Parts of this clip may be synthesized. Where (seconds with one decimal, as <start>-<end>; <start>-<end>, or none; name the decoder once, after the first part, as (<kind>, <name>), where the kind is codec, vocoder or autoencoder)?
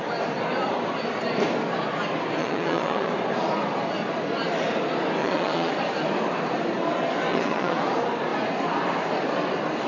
2.4-3.1 (vocoder, Vocos); 5.2-5.7; 7.3-7.8